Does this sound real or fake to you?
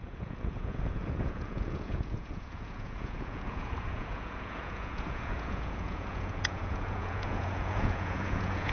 fake